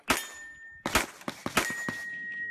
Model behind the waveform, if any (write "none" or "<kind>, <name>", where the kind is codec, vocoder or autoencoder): none